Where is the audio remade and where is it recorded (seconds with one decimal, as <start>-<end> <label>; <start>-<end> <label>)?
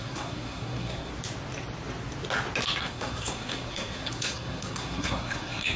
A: 0.0-1.1 remade; 1.1-2.8 recorded; 2.8-5.8 remade